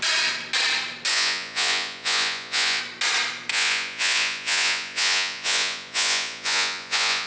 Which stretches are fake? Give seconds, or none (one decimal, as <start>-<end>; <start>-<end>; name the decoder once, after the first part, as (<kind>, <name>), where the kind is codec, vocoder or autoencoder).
1.1-2.8 (vocoder, Vocos); 3.5-7.3